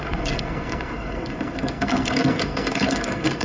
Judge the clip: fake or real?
fake